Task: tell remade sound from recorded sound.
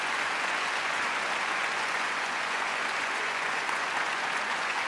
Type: remade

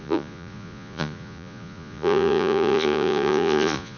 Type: remade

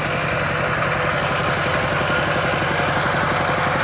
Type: recorded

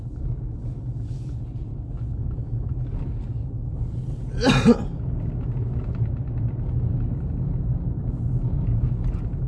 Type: recorded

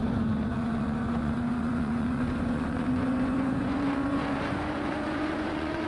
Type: remade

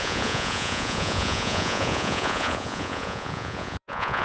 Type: remade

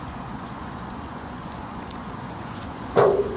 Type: remade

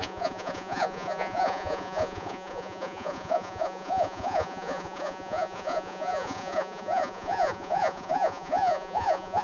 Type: remade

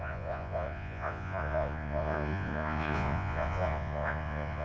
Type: remade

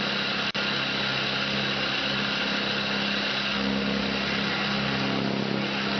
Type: recorded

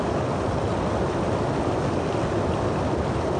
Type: recorded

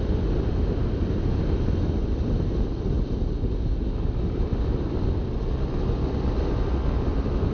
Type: recorded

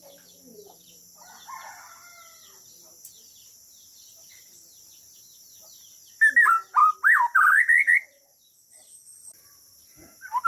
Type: recorded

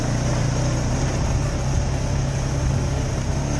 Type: recorded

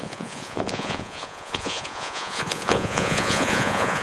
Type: remade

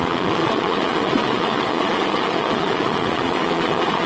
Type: remade